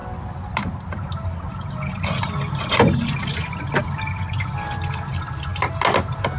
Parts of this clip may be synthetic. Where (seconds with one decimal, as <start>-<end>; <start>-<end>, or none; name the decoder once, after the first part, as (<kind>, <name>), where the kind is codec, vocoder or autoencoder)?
none